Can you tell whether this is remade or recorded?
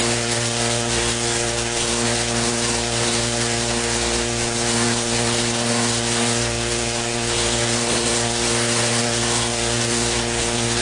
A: remade